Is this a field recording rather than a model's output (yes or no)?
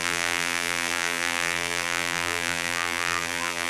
no